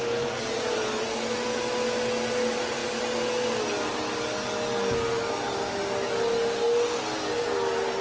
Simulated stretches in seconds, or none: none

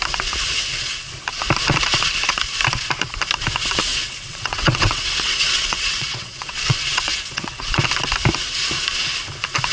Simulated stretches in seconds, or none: 3.9-7.8 (vocoder, WaveNeXt)

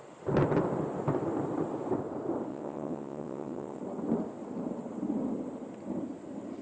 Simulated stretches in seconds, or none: 2.5-3.8 (vocoder, WaveNeXt)

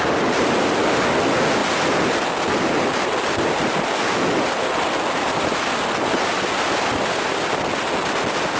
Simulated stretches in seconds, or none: none

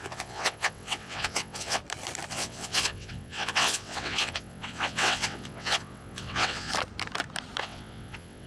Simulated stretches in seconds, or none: 0.0-1.8 (vocoder, WaveNeXt); 2.3-6.7; 7.6-8.5